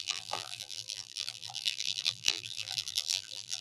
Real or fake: fake